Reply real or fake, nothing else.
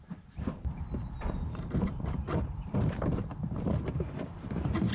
fake